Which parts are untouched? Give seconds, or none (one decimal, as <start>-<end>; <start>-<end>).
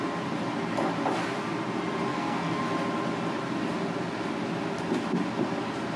0.0-2.1; 2.6-6.0